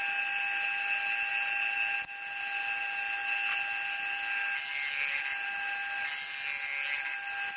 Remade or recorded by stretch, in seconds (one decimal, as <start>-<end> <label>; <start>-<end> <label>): 0.0-7.6 recorded

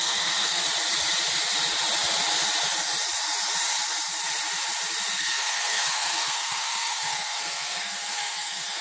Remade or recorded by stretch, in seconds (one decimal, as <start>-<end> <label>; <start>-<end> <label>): 0.0-0.6 remade; 0.6-5.1 recorded; 5.1-8.8 remade

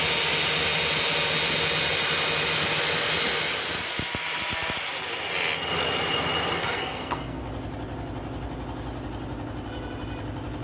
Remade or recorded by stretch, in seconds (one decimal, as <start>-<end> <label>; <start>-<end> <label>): 0.0-6.6 recorded; 6.6-7.4 remade; 7.4-10.6 recorded

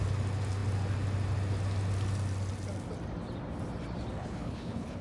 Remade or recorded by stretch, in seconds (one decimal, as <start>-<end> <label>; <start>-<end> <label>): 0.0-4.2 recorded; 4.2-5.0 remade

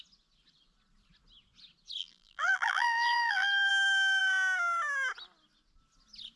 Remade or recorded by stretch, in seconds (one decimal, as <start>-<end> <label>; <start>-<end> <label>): 0.0-2.0 recorded; 2.0-3.7 remade; 3.7-6.4 recorded